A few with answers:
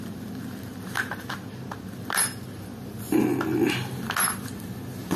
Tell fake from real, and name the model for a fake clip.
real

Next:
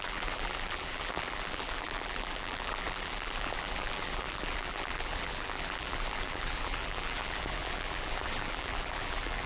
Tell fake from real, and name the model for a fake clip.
fake, vocoder, BigVGAN v2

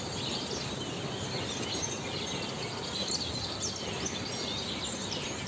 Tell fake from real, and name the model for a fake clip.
real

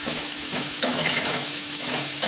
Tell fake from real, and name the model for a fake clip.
fake, autoencoder, DAC-VAE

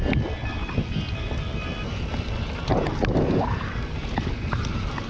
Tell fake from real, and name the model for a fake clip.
real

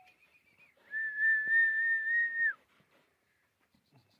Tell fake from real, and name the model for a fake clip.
fake, vocoder, BigVGAN v2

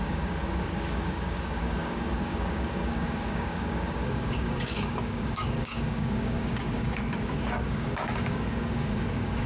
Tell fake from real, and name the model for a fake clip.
fake, codec, DAC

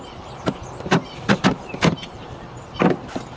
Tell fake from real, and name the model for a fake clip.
fake, vocoder, BigVGAN v2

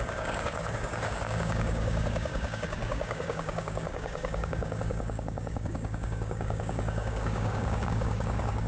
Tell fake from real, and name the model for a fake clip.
fake, codec, DAC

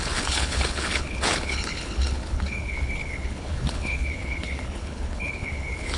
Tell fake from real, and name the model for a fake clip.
fake, codec, HILCodec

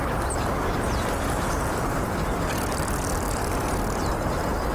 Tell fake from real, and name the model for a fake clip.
real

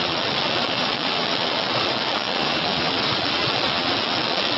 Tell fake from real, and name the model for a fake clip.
fake, vocoder, Vocos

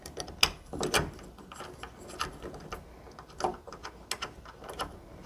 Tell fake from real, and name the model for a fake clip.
real